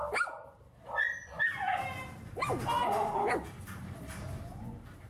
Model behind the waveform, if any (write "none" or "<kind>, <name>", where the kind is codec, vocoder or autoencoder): none